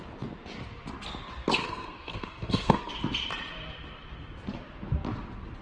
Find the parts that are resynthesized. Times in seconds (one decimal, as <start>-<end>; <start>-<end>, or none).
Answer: 1.6-2.9